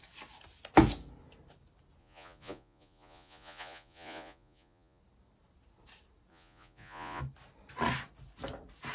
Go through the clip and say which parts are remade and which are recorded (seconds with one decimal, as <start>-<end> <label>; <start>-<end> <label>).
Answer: 0.0-2.0 recorded; 2.0-5.0 remade; 5.0-6.3 recorded; 6.3-7.2 remade; 7.2-8.9 recorded